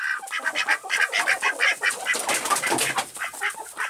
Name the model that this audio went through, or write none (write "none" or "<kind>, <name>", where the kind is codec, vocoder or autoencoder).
none